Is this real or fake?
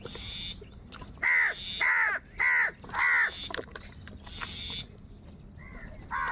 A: real